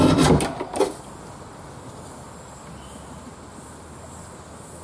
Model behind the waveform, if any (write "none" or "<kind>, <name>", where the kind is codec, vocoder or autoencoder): vocoder, BigVGAN v2